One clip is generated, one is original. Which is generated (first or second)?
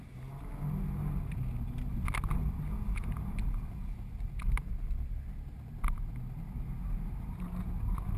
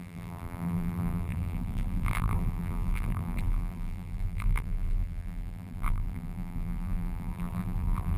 second